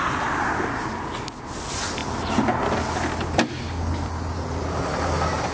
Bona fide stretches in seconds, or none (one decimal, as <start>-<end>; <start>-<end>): 0.0-5.5

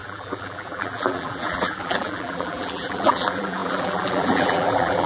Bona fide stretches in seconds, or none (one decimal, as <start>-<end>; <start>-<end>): none

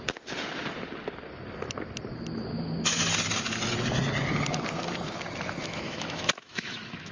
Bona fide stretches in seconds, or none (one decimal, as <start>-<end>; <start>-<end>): 0.0-5.6

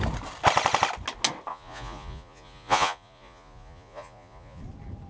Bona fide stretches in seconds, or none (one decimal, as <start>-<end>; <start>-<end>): 0.0-1.5; 4.6-5.1